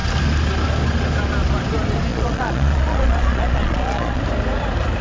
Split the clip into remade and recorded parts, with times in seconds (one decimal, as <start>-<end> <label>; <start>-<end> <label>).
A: 0.0-2.1 recorded; 2.1-4.2 remade; 4.2-5.0 recorded